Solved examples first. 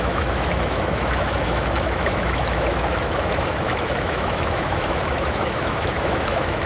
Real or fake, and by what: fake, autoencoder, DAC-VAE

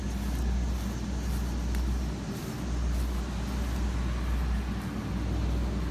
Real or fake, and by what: real